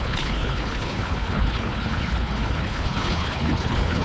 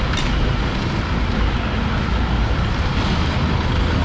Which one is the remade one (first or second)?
first